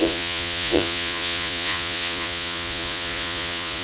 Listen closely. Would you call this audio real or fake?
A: fake